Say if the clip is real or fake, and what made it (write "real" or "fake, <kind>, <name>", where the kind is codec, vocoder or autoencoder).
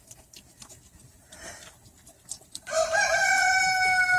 fake, vocoder, BigVGAN v2